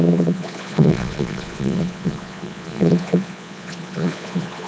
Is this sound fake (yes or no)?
yes